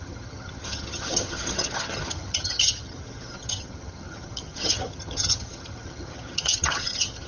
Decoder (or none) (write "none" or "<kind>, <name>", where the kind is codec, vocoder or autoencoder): vocoder, HiFi-GAN